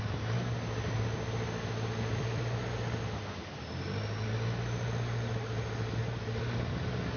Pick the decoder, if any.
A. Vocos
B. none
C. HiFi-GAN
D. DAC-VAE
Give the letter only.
B